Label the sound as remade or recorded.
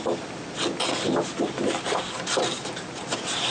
recorded